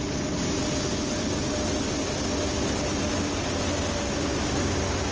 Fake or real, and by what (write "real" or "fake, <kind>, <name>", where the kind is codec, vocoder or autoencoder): real